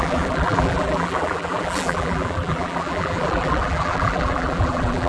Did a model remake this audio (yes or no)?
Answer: yes